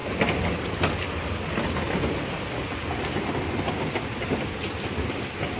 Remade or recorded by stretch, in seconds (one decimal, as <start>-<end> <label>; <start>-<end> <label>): 0.0-5.6 recorded